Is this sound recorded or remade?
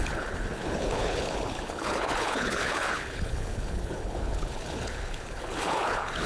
remade